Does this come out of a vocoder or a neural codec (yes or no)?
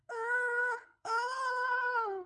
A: yes